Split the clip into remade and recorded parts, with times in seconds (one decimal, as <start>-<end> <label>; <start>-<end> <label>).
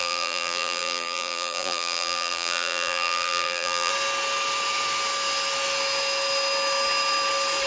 0.0-3.9 remade; 3.9-7.7 recorded